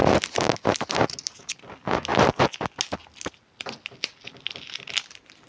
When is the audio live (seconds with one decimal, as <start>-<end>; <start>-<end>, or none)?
0.0-5.5